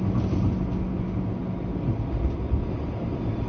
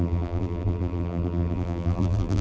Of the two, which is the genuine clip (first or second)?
first